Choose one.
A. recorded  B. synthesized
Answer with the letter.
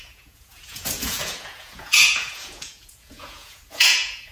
B